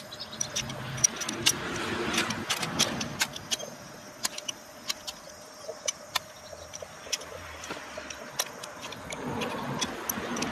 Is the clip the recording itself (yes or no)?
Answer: yes